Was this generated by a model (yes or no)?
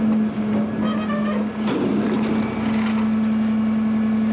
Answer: no